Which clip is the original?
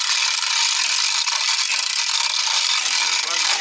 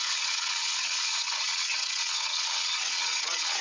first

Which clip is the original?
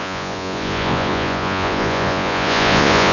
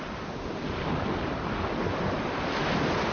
second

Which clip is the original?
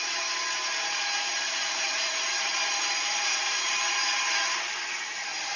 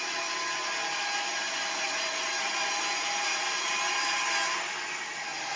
second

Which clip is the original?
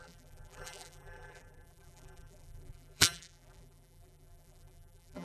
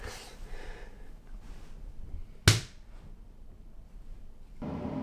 second